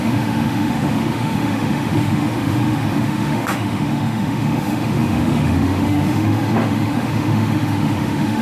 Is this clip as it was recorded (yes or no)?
no